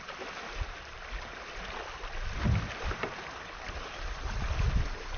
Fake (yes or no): no